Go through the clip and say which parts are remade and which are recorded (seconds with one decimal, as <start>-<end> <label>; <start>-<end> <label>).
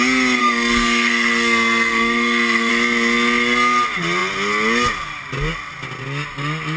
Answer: 0.0-0.4 recorded; 0.4-2.7 remade; 2.7-6.8 recorded